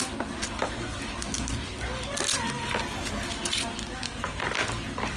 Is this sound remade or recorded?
recorded